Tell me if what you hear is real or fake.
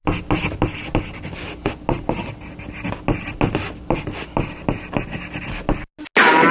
real